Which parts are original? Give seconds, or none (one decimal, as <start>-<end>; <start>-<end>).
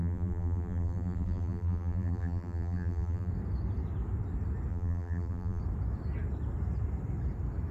3.3-4.7; 5.6-7.7